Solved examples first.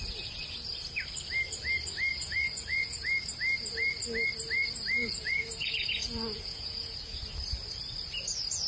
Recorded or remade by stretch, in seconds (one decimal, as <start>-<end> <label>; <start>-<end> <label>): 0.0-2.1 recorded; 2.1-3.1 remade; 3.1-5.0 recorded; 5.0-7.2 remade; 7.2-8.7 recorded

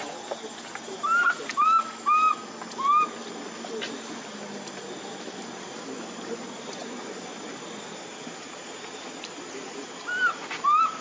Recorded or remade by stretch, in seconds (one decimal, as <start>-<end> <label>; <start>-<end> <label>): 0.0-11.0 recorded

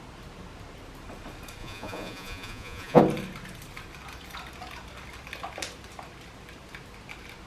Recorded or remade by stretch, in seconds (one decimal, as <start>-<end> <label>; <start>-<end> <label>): 0.0-1.6 recorded; 1.6-3.0 remade; 3.0-7.5 recorded

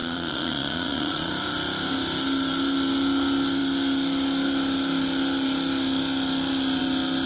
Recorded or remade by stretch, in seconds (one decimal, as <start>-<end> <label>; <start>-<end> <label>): 0.0-1.3 remade; 1.3-7.3 recorded

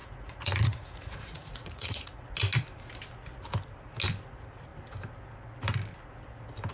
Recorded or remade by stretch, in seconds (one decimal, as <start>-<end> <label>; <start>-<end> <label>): 0.0-2.3 remade; 2.3-6.7 recorded

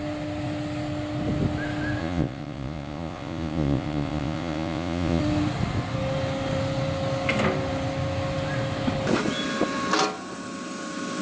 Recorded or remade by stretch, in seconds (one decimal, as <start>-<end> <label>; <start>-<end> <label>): 0.0-2.0 recorded; 2.0-5.2 remade; 5.2-11.2 recorded

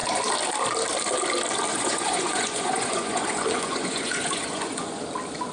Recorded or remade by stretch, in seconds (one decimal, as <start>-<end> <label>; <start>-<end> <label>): 0.0-1.7 recorded; 1.7-5.0 remade; 5.0-5.5 recorded

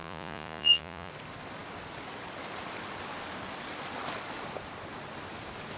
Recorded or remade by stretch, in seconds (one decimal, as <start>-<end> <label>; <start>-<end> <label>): 0.0-1.1 remade; 1.1-5.8 recorded